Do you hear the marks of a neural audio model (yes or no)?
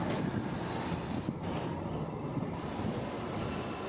no